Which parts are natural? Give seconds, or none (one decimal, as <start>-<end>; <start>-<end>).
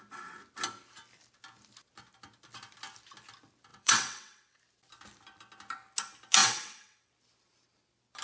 0.0-3.7; 4.6-6.4; 7.1-8.2